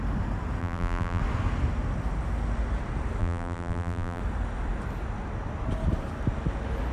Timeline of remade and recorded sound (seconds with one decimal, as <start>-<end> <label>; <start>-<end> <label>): 0.0-0.6 recorded; 0.6-1.2 remade; 1.2-3.2 recorded; 3.2-4.2 remade; 4.2-6.9 recorded